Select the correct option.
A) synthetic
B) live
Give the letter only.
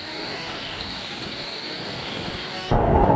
A